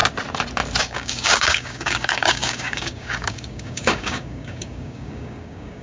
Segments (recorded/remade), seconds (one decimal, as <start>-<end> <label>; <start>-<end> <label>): 0.0-0.8 recorded; 0.8-5.8 remade